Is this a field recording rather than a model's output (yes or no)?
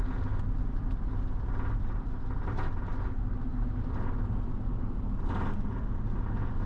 yes